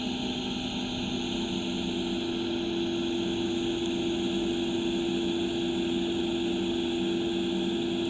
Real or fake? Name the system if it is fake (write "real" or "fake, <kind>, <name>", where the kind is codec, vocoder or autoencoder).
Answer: real